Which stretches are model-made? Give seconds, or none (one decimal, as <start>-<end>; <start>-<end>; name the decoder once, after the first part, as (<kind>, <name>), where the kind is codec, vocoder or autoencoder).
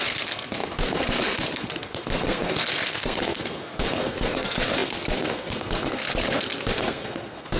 0.0-7.6 (codec, SNAC)